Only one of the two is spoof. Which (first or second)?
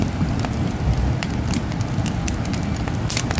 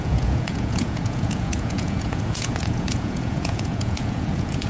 second